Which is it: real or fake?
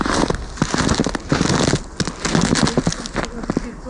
real